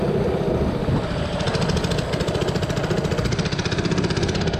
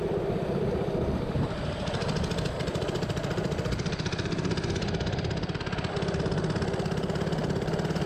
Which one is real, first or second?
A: first